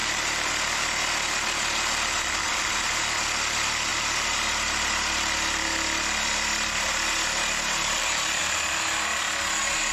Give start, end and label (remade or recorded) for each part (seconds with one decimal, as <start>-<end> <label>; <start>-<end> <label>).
0.0-0.5 remade; 0.5-3.9 recorded; 3.9-8.4 remade; 8.4-9.9 recorded